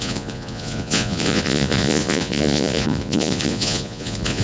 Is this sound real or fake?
fake